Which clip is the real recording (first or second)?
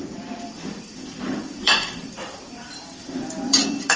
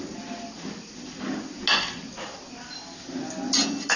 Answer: second